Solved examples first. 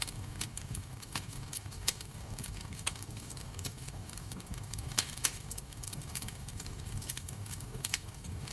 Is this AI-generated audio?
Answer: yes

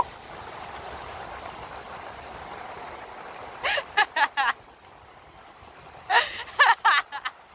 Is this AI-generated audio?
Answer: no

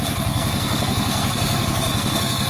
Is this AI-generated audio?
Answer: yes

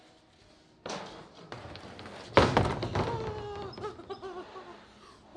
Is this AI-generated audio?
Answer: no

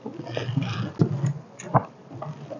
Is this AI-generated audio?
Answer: no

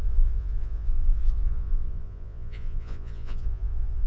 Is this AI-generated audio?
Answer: yes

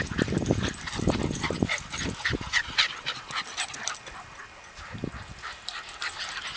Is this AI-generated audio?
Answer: no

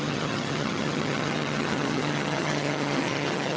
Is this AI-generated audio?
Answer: yes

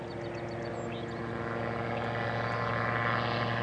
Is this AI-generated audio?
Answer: no